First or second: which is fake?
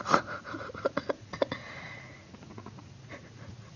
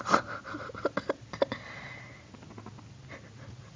first